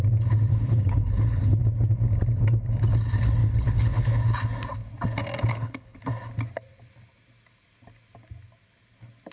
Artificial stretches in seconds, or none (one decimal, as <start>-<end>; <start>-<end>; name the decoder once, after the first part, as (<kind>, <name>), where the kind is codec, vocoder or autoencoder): 0.5-1.6 (codec, HILCodec); 3.4-4.2; 5.5-6.0

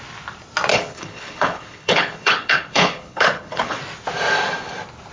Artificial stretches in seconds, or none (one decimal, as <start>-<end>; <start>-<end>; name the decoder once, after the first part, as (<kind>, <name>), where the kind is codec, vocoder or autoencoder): 0.7-3.8 (codec, HILCodec)

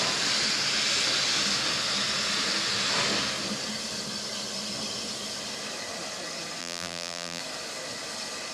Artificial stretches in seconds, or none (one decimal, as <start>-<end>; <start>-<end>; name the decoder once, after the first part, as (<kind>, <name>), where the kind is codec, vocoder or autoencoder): 6.6-7.4 (vocoder, BigVGAN v2)

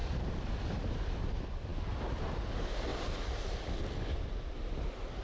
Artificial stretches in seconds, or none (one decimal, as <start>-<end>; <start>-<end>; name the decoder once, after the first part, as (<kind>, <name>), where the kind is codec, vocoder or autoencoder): none